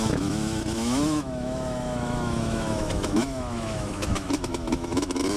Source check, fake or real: fake